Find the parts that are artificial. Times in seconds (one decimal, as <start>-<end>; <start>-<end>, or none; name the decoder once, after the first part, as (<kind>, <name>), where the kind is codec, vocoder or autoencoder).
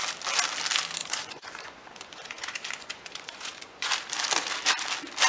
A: 1.0-3.9 (vocoder, Vocos)